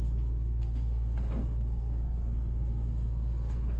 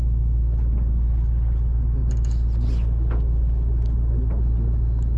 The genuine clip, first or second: second